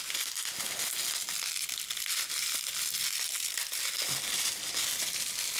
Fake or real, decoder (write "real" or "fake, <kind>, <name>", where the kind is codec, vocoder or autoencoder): real